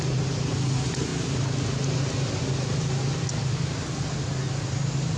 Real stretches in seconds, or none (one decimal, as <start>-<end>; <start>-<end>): 0.0-5.2